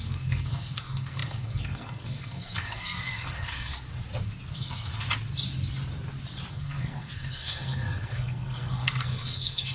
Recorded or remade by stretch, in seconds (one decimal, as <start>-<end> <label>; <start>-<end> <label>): 0.0-3.7 remade; 3.7-4.5 recorded; 4.5-4.9 remade; 4.9-6.5 recorded; 6.5-9.7 remade